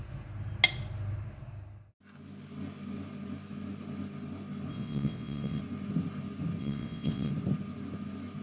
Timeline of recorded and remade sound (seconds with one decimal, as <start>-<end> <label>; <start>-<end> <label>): 0.0-4.7 recorded; 4.7-5.6 remade; 5.6-6.6 recorded; 6.6-7.3 remade; 7.3-8.4 recorded